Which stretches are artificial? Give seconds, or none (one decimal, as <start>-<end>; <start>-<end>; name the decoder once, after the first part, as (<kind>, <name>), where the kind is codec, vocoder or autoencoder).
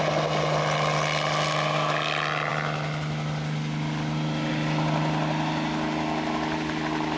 none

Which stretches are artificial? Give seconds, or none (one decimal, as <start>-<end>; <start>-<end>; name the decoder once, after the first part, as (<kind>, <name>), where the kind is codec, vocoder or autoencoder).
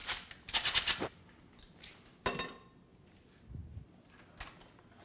none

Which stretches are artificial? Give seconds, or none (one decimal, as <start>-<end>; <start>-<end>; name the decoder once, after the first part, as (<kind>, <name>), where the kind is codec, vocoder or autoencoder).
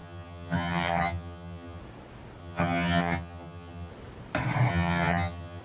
0.0-1.8 (vocoder, HiFi-GAN); 2.4-3.9; 4.7-5.6